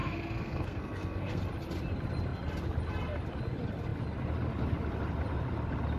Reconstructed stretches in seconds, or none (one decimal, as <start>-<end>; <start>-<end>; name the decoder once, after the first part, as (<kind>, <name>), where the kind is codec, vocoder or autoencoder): 0.0-1.4 (codec, SNAC)